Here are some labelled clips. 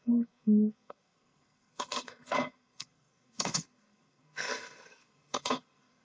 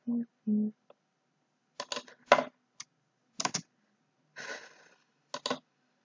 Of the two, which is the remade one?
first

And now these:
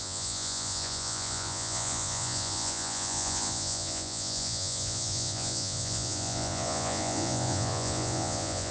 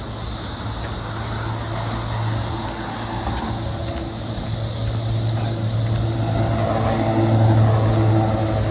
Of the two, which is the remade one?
first